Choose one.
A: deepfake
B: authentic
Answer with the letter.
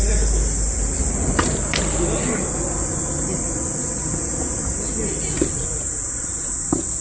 B